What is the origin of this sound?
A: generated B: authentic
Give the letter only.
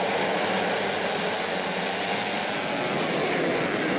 B